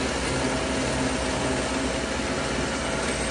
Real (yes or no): yes